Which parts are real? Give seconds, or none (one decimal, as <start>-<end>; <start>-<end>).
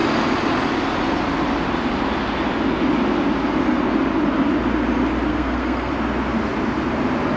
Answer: 0.0-5.3; 5.9-7.4